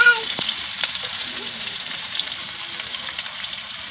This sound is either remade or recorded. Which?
remade